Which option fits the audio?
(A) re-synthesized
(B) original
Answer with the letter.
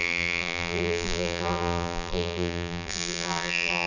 A